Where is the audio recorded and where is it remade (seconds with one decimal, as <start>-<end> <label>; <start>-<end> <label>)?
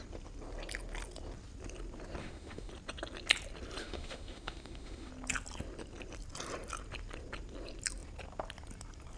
0.0-2.2 recorded; 2.2-2.7 remade; 2.7-3.8 recorded; 3.8-5.1 remade; 5.1-9.2 recorded